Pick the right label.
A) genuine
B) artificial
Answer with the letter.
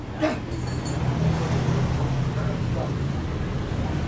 A